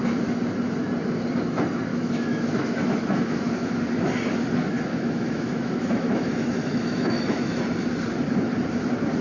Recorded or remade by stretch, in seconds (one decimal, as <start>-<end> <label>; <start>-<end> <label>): 0.0-1.9 recorded; 1.9-3.8 remade; 3.8-4.9 recorded; 4.9-7.6 remade; 7.6-9.2 recorded